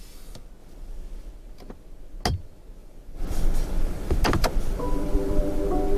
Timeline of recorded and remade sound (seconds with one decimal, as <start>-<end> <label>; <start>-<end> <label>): 0.0-0.6 recorded; 0.6-1.3 remade; 1.3-2.8 recorded; 2.8-5.6 remade; 5.6-6.0 recorded